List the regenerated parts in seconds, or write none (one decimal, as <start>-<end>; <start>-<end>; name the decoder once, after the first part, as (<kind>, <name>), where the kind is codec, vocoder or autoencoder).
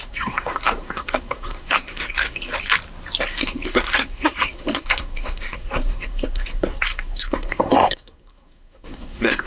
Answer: 0.0-2.5 (codec, SNAC); 3.2-9.5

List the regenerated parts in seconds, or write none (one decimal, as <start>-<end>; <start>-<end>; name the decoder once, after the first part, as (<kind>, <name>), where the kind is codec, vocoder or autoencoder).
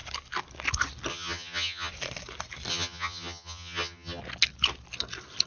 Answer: 1.1-1.9 (vocoder, HiFi-GAN); 2.7-4.2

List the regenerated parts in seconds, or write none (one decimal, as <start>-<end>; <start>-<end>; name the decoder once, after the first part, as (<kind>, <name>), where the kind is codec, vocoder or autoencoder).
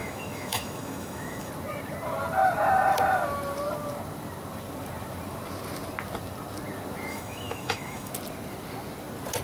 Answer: 0.0-1.5 (autoencoder, DAC-VAE); 7.1-8.1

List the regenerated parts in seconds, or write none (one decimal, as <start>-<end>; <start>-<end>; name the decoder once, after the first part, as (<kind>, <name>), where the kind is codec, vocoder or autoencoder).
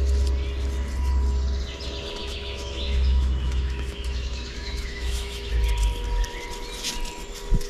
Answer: 2.2-5.5 (autoencoder, DAC-VAE)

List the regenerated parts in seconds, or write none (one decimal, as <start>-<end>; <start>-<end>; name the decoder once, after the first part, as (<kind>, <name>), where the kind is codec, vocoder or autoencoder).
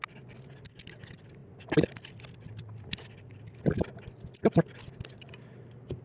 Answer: none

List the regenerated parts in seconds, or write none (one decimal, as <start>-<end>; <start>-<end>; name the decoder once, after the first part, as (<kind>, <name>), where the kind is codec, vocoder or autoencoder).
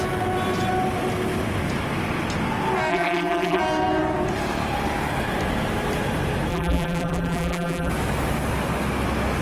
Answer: 2.9-3.6 (vocoder, BigVGAN v2); 6.5-7.9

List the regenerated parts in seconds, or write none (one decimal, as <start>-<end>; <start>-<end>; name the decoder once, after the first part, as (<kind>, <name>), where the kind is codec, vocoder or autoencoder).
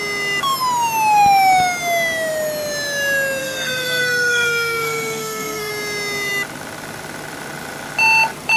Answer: 3.4-5.7 (codec, SNAC)